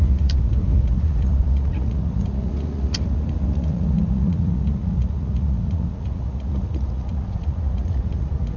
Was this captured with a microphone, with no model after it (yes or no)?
no